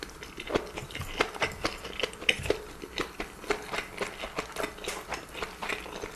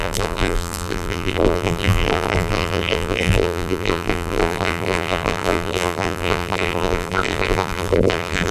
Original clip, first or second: first